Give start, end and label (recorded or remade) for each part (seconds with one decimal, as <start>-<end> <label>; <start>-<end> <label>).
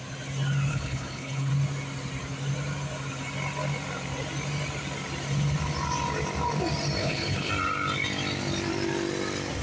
0.0-0.7 recorded; 0.7-1.5 remade; 1.5-7.0 recorded; 7.0-7.5 remade; 7.5-9.6 recorded